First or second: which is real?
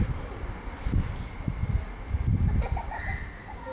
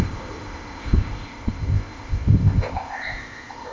first